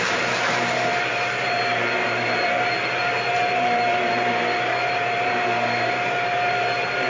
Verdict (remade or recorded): remade